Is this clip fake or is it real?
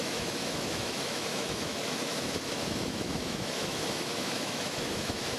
fake